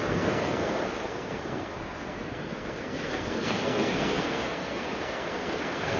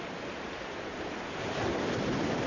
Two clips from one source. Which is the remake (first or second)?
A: first